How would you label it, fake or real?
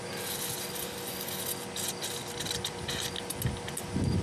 real